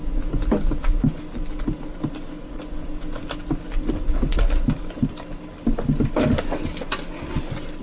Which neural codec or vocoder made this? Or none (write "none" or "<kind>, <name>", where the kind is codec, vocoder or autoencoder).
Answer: none